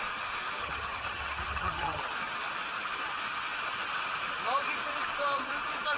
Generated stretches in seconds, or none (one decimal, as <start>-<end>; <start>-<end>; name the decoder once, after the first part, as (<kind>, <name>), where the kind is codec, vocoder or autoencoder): 0.6-2.0 (vocoder, HiFi-GAN)